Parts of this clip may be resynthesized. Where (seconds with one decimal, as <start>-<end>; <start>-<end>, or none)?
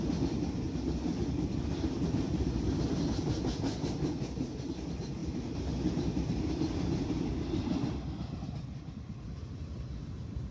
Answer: none